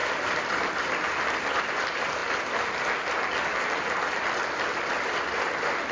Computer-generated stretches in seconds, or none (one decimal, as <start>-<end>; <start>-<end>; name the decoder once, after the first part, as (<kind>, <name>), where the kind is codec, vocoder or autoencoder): 1.6-2.2 (vocoder, BigVGAN v2)